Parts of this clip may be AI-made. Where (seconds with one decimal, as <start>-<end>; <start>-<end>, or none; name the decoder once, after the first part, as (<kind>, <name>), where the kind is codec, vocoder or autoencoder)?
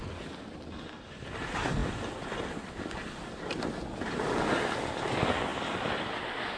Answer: none